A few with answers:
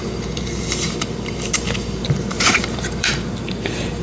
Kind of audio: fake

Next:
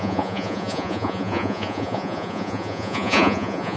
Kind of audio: fake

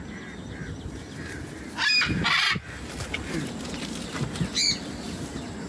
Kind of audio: real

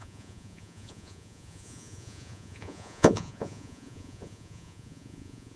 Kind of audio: fake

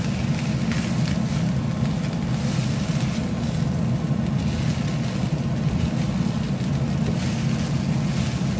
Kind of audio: real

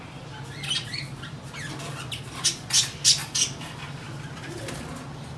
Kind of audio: real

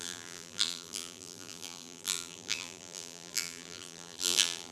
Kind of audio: fake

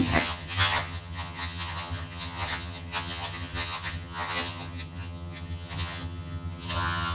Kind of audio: fake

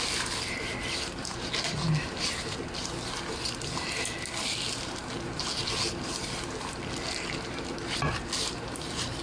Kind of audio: real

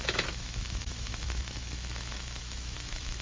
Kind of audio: fake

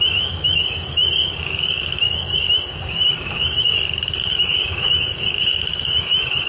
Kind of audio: fake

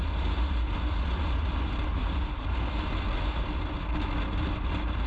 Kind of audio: real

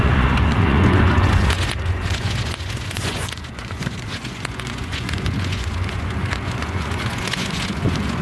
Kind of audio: fake